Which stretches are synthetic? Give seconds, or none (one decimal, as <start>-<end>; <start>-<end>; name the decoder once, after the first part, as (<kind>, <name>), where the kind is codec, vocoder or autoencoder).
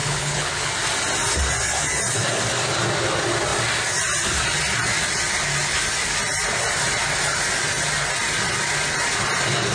0.0-0.7 (codec, HILCodec)